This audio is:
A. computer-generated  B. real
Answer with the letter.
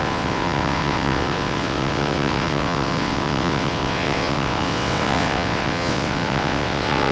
A